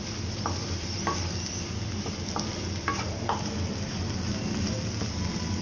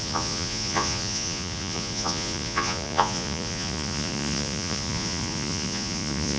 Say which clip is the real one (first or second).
first